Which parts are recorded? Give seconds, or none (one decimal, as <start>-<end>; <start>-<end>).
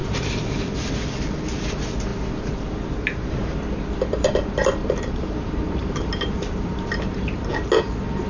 0.9-4.8; 7.4-8.3